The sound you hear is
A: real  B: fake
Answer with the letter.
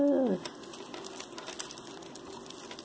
A